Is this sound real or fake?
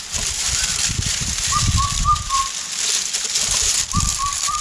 fake